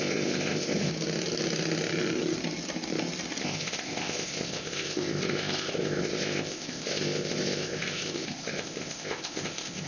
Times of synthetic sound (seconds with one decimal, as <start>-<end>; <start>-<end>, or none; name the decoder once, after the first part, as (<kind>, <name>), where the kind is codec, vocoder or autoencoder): 0.0-0.9 (codec, ZipCodec); 3.4-9.9